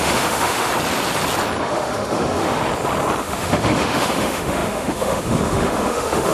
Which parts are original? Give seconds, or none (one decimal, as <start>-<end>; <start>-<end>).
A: 0.7-1.6; 2.6-3.2